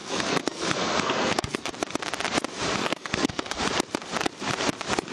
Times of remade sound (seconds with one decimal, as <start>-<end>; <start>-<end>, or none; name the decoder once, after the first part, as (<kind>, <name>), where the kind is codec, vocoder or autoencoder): 0.0-1.7 (codec, SNAC); 2.8-3.6